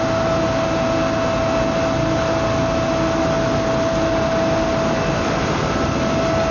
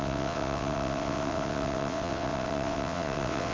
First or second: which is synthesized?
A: second